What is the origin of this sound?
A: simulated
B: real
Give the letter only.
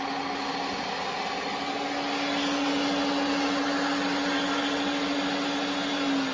B